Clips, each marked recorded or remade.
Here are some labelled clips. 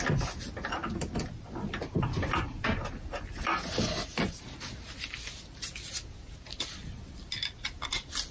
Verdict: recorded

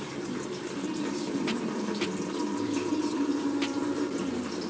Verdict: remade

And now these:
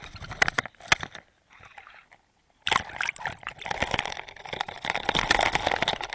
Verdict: recorded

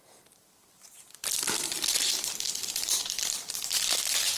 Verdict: remade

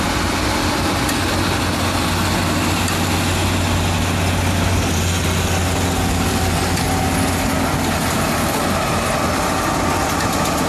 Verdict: recorded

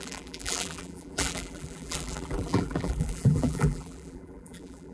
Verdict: remade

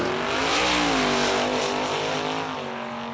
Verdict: recorded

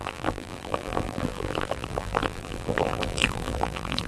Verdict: remade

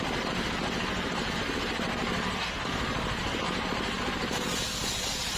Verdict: recorded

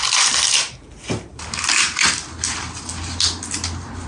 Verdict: recorded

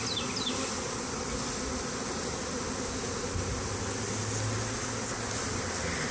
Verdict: recorded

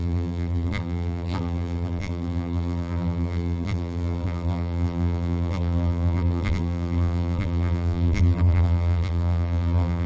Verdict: remade